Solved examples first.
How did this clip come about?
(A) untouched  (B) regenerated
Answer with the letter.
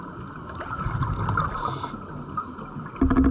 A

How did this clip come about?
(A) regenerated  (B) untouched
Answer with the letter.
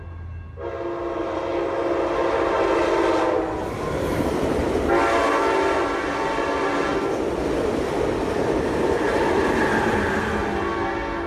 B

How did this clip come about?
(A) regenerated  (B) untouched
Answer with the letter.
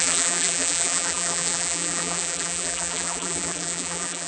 A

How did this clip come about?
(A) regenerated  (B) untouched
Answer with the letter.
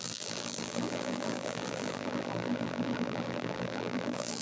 A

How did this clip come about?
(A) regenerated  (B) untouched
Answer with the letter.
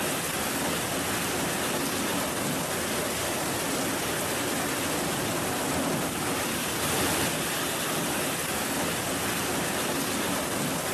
B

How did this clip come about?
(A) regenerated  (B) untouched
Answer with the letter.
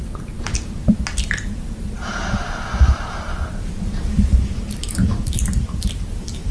A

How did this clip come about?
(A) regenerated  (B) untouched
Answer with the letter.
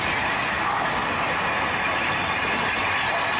B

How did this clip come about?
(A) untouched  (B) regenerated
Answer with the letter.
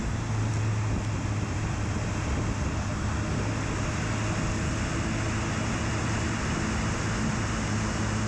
A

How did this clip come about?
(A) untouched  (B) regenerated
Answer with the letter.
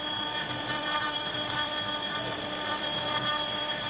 B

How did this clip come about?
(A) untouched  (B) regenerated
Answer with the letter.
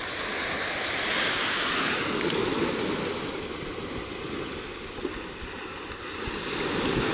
A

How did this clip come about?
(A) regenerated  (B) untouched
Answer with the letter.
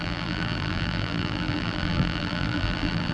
A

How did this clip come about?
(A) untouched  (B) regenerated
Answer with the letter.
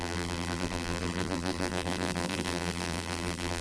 B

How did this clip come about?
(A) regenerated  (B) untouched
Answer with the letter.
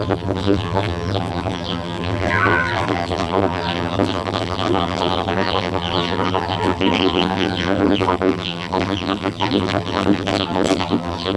A